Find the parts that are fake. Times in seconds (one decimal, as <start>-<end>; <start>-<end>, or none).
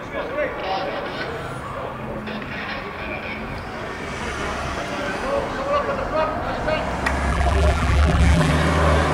7.3-8.5